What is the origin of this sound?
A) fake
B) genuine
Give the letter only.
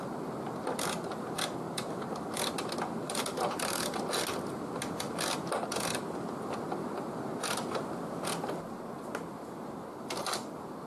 B